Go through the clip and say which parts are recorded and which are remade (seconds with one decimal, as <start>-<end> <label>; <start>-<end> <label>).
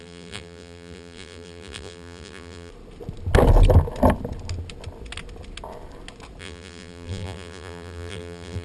0.0-2.7 remade; 2.7-6.4 recorded; 6.4-8.6 remade